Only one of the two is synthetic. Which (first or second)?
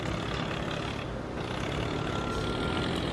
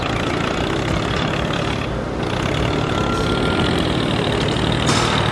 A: second